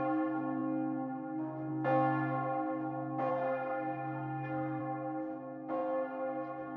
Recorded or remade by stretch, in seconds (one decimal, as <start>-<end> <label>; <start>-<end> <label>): 0.0-3.3 recorded; 3.3-4.8 remade; 4.8-6.8 recorded